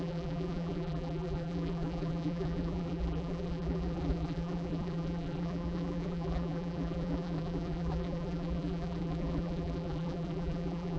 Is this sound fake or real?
fake